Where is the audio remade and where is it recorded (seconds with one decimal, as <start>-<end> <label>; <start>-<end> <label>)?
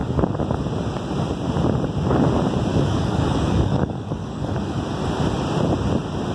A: 0.0-2.7 recorded; 2.7-4.8 remade; 4.8-6.3 recorded